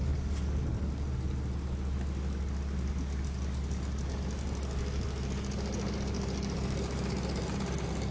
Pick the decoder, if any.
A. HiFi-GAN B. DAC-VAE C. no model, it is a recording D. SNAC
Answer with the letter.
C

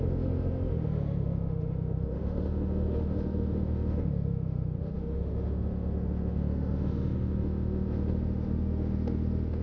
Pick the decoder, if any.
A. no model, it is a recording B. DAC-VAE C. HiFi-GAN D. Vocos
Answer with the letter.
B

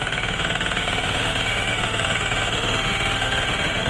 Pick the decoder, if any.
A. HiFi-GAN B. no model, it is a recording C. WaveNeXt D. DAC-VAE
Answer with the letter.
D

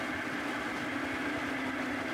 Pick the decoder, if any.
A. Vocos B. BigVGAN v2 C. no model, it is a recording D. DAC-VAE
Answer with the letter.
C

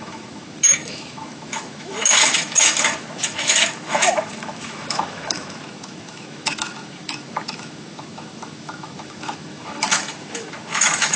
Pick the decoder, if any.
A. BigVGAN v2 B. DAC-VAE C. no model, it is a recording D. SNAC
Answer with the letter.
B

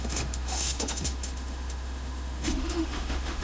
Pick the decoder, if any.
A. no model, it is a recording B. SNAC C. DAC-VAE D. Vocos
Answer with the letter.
C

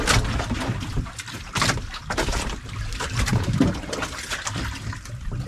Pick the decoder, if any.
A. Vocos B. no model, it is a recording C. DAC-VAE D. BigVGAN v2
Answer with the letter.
B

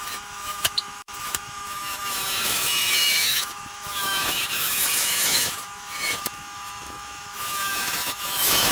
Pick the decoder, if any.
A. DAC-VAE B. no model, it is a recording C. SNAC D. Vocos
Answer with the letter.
A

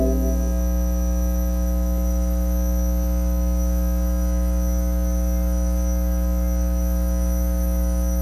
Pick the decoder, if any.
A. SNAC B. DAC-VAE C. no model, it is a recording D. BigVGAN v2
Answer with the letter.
B